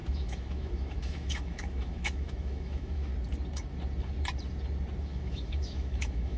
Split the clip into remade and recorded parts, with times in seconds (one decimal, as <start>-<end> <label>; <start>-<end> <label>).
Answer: 0.0-3.1 remade; 3.1-5.0 recorded; 5.0-6.4 remade